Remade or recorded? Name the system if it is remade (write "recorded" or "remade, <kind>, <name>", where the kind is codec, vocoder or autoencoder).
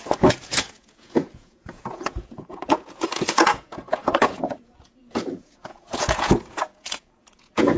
remade, vocoder, Vocos